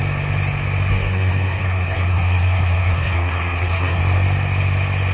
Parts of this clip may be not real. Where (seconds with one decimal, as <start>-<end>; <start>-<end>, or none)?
0.9-4.0